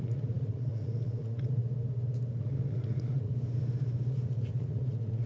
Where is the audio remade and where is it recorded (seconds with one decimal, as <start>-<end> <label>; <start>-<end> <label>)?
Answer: 0.0-1.6 remade; 1.6-2.4 recorded; 2.4-3.3 remade; 3.3-4.1 recorded; 4.1-5.3 remade